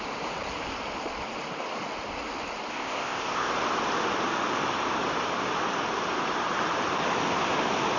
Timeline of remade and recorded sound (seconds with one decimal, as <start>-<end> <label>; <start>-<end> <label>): 0.0-2.7 recorded; 2.7-3.5 remade; 3.5-8.0 recorded